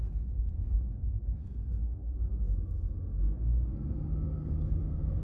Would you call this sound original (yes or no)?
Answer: no